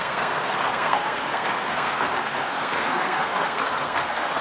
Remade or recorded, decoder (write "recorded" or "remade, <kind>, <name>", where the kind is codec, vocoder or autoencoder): remade, codec, SNAC